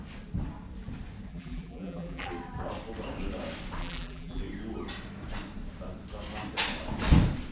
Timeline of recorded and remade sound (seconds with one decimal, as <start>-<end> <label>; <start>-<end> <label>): 0.0-1.3 recorded; 1.3-2.3 remade; 2.3-3.8 recorded; 3.8-4.4 remade; 4.4-7.5 recorded